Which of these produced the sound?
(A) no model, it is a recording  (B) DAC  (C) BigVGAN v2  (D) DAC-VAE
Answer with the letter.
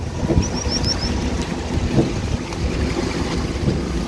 A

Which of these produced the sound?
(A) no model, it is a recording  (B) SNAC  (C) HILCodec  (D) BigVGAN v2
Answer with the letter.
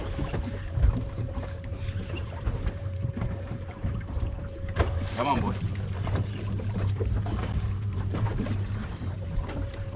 D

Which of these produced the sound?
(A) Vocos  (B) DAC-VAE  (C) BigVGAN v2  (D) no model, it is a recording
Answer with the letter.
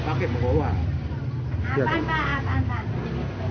D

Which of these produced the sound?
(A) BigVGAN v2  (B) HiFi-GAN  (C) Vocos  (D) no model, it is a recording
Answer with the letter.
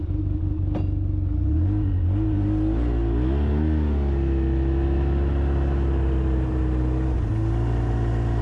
D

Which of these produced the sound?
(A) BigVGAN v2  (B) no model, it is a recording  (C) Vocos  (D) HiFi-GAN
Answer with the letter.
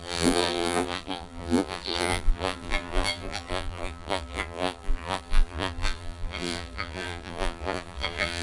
A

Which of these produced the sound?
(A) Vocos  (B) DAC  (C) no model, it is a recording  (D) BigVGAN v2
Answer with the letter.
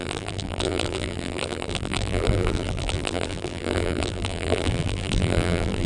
D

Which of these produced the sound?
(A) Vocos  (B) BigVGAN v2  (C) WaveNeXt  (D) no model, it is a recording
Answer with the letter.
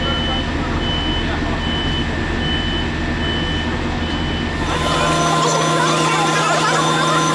D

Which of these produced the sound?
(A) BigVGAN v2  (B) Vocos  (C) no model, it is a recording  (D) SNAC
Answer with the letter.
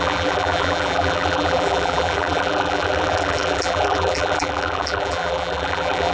A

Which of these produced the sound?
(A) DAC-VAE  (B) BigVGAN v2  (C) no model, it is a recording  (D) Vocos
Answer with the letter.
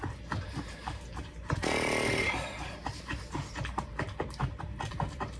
B